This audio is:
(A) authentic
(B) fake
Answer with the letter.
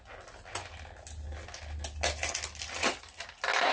A